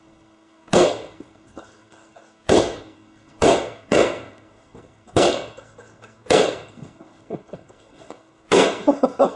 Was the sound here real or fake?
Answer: fake